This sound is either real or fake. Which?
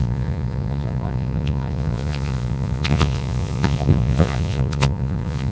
fake